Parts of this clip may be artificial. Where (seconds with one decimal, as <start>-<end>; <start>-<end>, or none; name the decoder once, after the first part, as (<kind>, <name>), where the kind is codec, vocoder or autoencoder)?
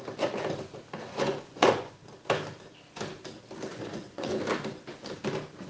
1.1-1.9 (vocoder, Vocos); 3.7-4.4